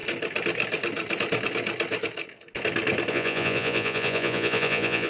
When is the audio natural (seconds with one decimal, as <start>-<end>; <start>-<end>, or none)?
0.0-3.1